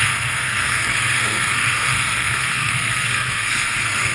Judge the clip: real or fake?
fake